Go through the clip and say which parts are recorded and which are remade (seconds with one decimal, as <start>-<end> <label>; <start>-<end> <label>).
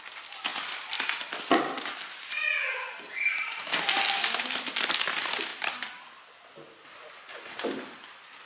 0.0-8.5 recorded